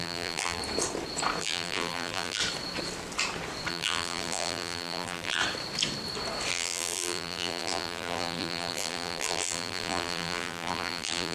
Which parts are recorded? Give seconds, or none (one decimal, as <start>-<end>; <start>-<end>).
0.6-1.4; 2.4-3.7; 5.4-6.5